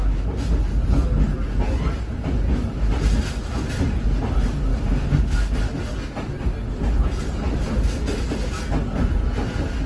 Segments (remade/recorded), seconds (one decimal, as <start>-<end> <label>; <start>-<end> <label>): 0.0-9.9 recorded